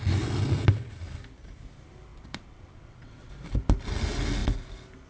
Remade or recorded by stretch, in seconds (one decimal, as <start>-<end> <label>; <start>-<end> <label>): 0.0-2.1 recorded; 2.1-3.3 remade; 3.3-5.1 recorded